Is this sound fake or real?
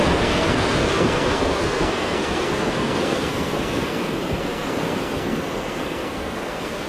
fake